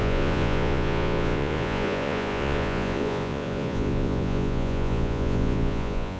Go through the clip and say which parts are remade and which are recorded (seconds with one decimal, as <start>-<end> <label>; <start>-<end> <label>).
0.0-6.2 remade